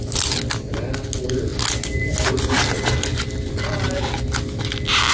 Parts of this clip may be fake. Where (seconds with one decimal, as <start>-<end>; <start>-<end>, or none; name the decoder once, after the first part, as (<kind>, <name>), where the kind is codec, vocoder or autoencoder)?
none